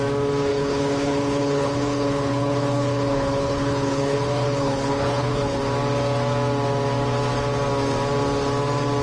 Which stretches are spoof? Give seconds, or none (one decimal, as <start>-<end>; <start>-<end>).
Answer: 0.5-5.6